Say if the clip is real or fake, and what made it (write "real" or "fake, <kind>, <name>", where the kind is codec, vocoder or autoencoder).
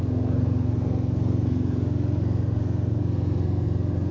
fake, codec, SNAC